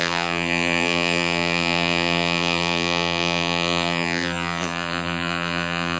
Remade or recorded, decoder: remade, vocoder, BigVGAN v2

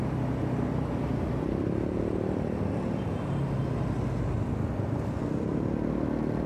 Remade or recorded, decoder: recorded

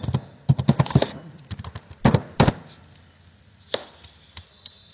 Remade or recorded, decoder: recorded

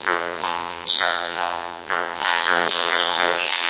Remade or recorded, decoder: remade, vocoder, BigVGAN v2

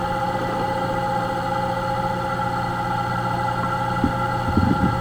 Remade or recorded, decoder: recorded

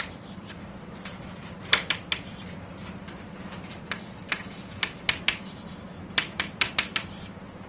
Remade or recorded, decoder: remade, vocoder, BigVGAN v2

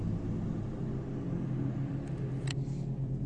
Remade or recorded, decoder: recorded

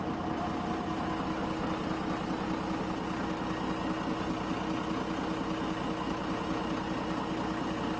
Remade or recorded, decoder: recorded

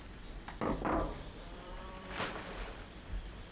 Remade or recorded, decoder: remade, vocoder, BigVGAN v2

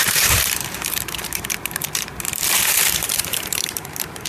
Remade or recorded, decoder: remade, vocoder, BigVGAN v2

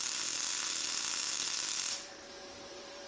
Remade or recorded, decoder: remade, vocoder, BigVGAN v2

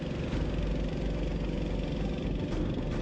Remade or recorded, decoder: recorded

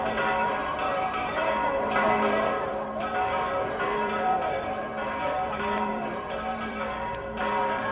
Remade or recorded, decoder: remade, vocoder, BigVGAN v2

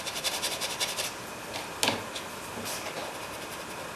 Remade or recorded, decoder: recorded